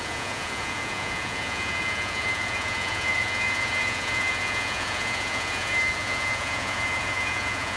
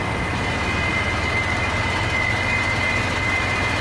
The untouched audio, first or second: second